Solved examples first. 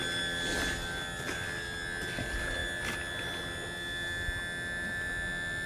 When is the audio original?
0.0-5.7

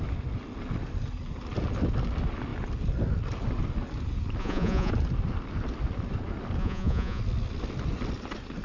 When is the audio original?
0.0-4.4; 4.9-6.6; 7.2-8.6

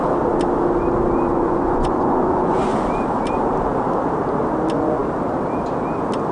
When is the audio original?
0.0-1.3; 2.6-6.3

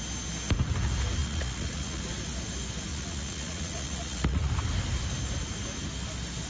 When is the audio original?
0.0-1.2; 2.0-2.9; 4.5-6.5

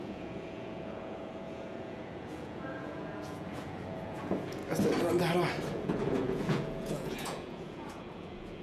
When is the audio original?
4.6-5.7

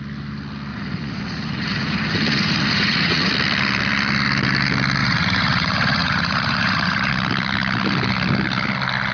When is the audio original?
0.0-0.7; 3.3-5.0; 7.1-9.1

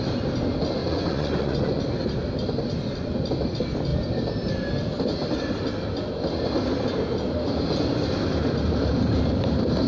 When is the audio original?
0.0-0.8; 1.8-9.9